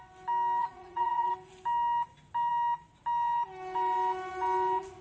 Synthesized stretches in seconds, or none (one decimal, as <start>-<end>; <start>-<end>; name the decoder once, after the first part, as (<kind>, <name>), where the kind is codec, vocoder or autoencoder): 0.6-1.3 (vocoder, Vocos)